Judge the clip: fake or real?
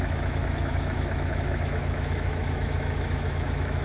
fake